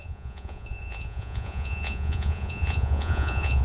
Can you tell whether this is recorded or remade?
remade